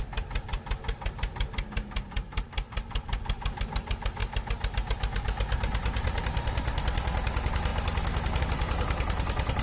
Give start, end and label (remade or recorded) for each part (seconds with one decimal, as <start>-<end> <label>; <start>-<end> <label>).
0.0-9.6 recorded

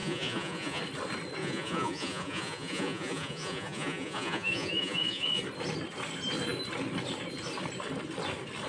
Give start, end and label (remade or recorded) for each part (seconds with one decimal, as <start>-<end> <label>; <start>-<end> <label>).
0.0-0.8 remade; 0.8-1.4 recorded; 1.4-5.4 remade; 5.4-8.7 recorded